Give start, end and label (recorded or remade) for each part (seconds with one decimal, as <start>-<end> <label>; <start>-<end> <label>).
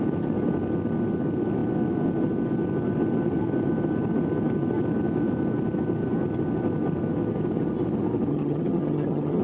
0.0-8.3 recorded; 8.3-9.4 remade